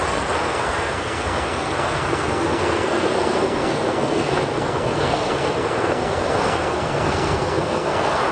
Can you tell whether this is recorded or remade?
remade